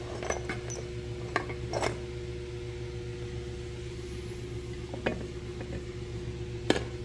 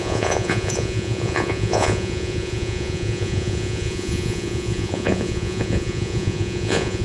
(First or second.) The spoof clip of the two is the second